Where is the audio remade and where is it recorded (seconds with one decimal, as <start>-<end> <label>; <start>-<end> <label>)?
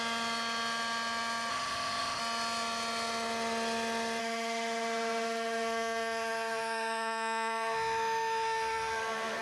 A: 0.0-1.5 recorded; 1.5-2.2 remade; 2.2-4.2 recorded; 4.2-9.4 remade